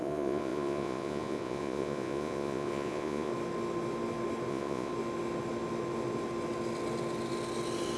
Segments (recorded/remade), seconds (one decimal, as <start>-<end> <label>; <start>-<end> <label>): 0.0-3.3 remade; 3.3-4.5 recorded; 4.5-4.9 remade; 4.9-8.0 recorded